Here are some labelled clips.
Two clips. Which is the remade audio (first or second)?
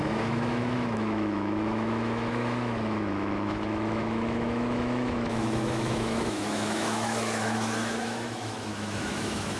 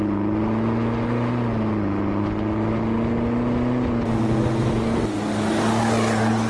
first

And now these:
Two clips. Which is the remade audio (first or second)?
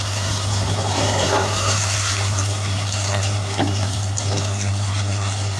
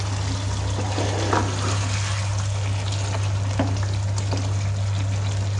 first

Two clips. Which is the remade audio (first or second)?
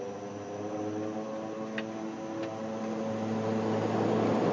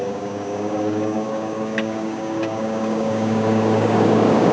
second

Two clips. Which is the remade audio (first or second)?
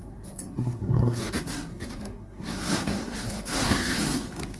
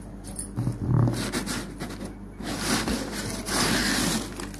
first